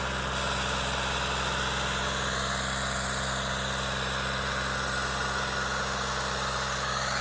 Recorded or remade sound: recorded